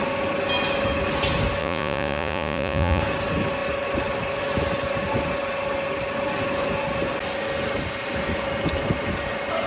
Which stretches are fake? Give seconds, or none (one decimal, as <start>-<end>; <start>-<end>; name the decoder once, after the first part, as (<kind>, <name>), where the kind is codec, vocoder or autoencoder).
1.6-3.0 (vocoder, Vocos)